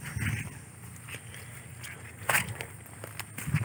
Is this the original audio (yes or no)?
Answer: yes